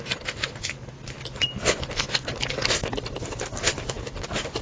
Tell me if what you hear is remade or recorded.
recorded